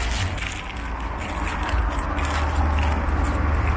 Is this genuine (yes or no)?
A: yes